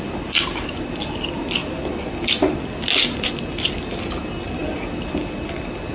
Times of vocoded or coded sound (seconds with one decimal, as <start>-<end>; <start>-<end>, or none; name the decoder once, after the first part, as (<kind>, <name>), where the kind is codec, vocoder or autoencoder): none